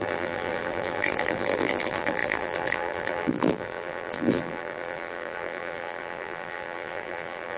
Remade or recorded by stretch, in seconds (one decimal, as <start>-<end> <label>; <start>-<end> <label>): 0.0-7.6 remade